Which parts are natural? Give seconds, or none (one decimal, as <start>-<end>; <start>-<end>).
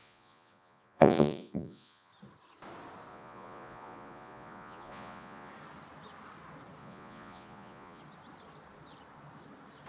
2.1-3.1; 5.5-6.8; 8.0-9.9